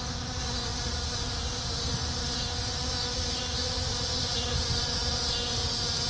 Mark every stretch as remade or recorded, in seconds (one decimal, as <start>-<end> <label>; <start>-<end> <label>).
0.0-6.1 recorded

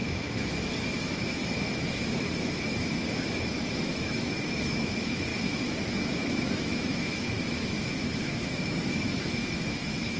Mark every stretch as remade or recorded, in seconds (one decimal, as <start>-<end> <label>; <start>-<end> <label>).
0.0-10.2 remade

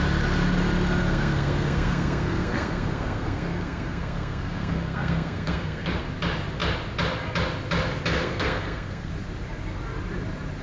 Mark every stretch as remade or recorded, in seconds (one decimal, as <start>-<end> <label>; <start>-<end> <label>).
0.0-1.0 recorded; 1.0-6.0 remade; 6.0-8.1 recorded; 8.1-9.1 remade; 9.1-10.6 recorded

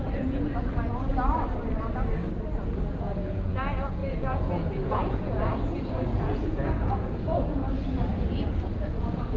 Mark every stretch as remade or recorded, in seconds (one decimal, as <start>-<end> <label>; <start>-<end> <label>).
0.0-1.1 remade; 1.1-2.6 recorded; 2.6-7.6 remade; 7.6-8.6 recorded; 8.6-9.4 remade

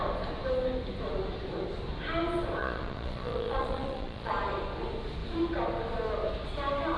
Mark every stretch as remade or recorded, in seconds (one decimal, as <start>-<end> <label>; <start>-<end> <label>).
0.0-2.6 recorded; 2.6-4.3 remade; 4.3-7.0 recorded

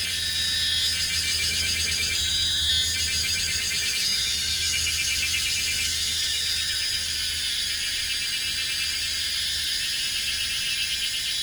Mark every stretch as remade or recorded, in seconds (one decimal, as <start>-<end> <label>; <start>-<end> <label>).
0.0-1.3 recorded; 1.3-2.7 remade; 2.7-3.2 recorded; 3.2-7.1 remade; 7.1-11.4 recorded

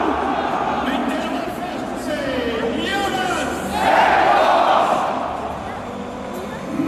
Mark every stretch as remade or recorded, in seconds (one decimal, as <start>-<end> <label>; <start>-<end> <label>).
0.0-1.0 recorded; 1.0-2.1 remade; 2.1-6.9 recorded

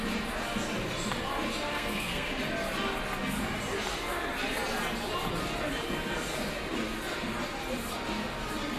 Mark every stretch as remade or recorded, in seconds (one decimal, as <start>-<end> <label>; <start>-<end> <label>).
0.0-1.7 recorded; 1.7-2.3 remade; 2.3-8.8 recorded